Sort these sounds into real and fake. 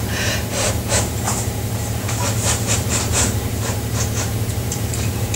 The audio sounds fake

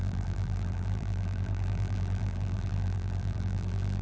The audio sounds fake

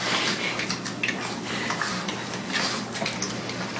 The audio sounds real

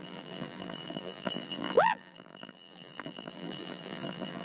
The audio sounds fake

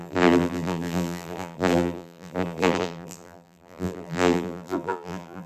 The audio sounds fake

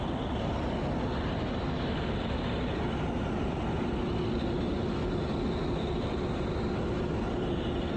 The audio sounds real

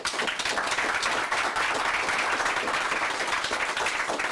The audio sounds fake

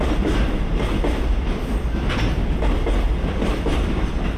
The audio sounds real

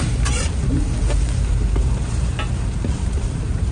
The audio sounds fake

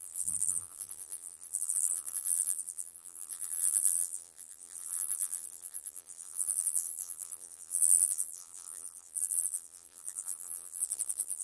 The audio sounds fake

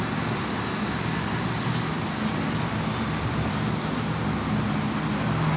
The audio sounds real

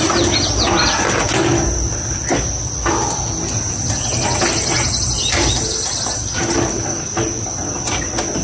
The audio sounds real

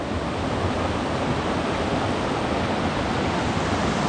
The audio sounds real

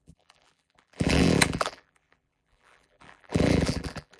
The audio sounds fake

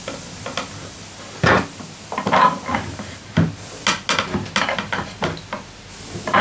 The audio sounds real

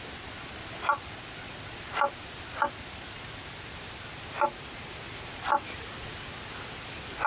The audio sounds real